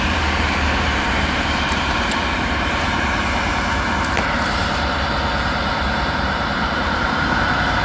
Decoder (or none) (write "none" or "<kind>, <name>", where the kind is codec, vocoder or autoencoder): vocoder, BigVGAN v2